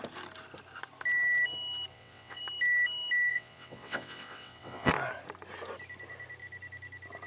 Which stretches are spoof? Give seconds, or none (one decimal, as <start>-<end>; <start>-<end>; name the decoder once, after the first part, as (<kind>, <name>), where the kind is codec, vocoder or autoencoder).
1.9-2.4 (vocoder, WaveNeXt); 3.3-4.9

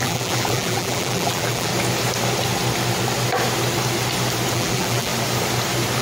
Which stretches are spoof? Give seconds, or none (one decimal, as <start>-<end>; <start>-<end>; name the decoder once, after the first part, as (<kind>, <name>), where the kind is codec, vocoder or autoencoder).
0.0-1.7 (vocoder, BigVGAN v2); 4.5-5.1

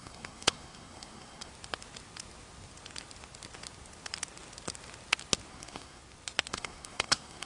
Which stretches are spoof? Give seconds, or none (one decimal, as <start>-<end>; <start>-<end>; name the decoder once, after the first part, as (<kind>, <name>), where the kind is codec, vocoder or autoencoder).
0.0-1.5 (codec, SNAC); 5.5-6.0; 6.5-7.5

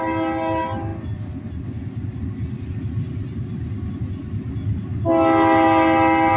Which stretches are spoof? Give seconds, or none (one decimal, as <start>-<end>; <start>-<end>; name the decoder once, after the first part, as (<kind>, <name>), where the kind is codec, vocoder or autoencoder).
none

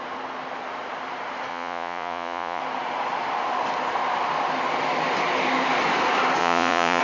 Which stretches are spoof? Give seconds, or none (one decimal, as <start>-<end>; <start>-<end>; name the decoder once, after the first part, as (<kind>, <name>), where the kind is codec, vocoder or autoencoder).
1.5-2.6 (vocoder, Vocos); 6.4-7.0